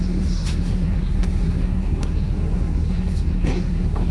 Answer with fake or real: fake